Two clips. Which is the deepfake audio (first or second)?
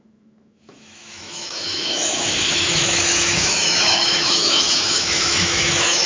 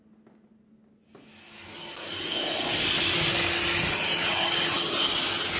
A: first